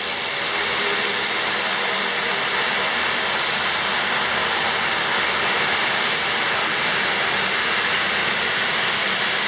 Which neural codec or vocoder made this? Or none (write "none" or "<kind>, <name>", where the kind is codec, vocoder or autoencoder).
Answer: none